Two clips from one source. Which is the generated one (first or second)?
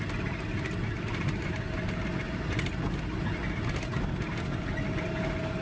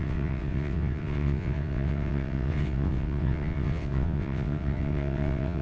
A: second